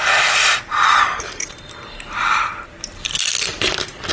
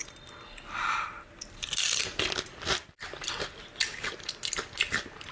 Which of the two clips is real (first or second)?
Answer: second